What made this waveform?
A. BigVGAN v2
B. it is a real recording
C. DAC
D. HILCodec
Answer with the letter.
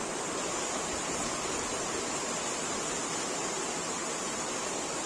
B